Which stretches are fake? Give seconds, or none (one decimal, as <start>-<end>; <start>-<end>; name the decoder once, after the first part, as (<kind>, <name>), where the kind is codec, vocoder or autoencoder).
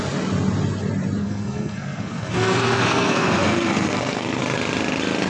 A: 1.2-4.4 (codec, SNAC)